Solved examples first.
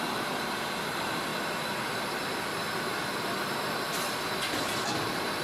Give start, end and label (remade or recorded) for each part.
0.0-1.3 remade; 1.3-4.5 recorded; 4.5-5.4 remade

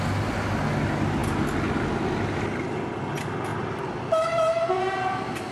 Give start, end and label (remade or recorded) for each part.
0.0-3.5 recorded; 3.5-4.8 remade; 4.8-5.5 recorded

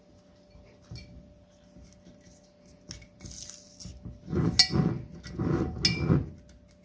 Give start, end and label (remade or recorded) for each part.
0.0-6.8 recorded